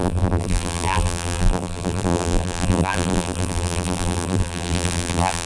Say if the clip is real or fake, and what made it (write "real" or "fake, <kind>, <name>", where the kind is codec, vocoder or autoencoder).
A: fake, vocoder, BigVGAN v2